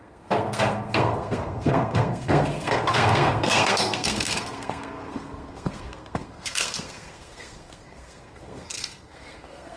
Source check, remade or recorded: remade